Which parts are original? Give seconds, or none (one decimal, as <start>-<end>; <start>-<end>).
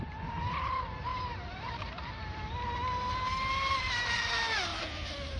0.0-1.1; 4.3-4.7